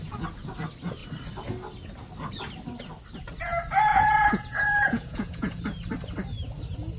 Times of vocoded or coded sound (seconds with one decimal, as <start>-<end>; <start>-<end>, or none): 3.9-5.6